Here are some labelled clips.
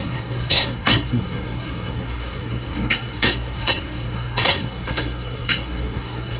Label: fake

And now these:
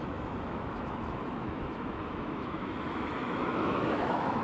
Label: fake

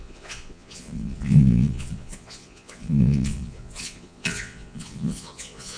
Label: fake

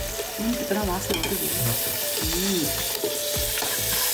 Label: real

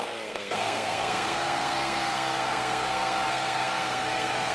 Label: fake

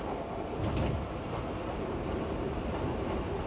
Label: real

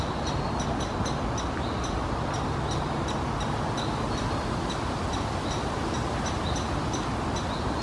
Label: real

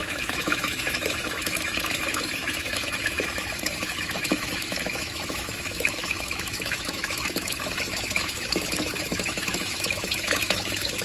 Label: fake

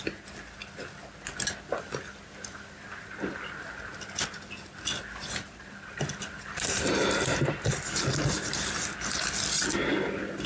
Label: real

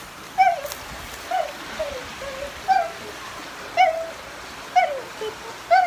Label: real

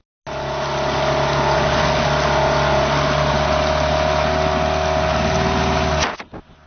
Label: real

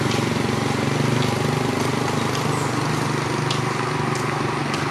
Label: real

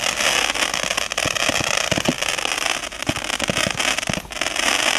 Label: real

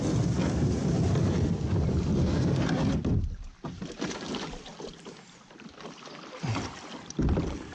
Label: real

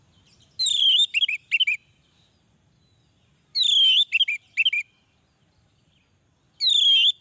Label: real